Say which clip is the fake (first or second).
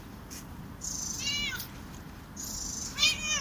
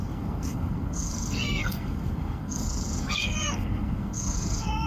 second